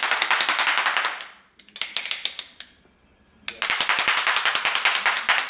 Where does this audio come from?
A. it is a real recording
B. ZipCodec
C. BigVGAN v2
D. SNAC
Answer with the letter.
A